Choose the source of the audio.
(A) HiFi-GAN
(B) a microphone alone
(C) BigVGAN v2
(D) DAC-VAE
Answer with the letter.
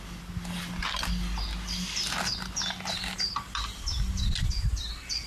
B